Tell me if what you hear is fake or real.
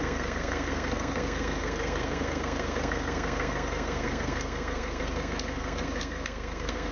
fake